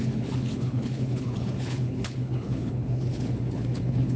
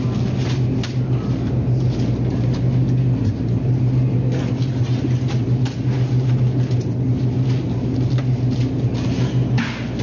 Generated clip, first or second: first